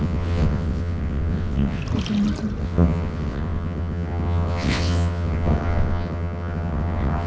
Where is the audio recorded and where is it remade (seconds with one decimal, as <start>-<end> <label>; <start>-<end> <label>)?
0.0-1.8 remade; 1.8-2.6 recorded; 2.6-7.3 remade